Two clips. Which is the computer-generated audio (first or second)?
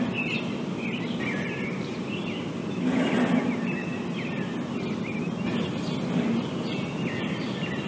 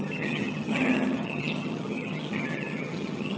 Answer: second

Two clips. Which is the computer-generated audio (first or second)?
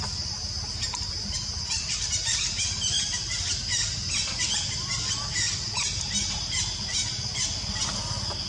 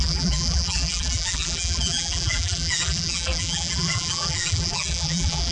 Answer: second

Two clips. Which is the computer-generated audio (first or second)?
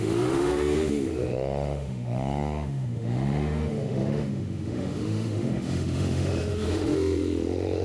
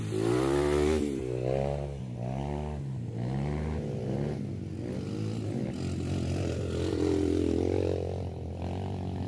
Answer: first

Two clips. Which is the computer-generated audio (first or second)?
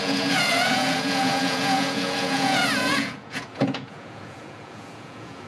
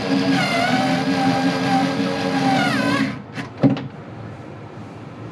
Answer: first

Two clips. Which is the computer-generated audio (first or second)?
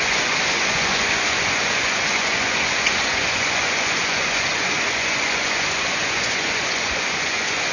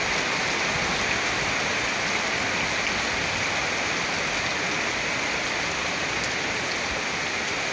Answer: first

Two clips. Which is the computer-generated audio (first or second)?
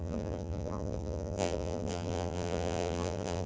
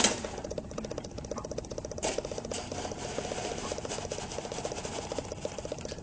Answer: first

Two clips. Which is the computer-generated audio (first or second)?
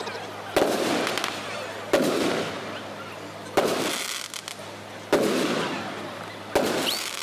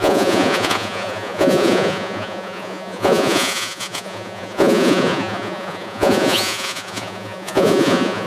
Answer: second